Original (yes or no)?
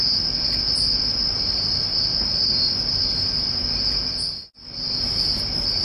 yes